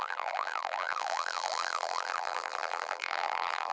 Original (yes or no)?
no